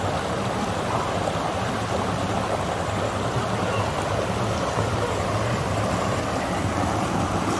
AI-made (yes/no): no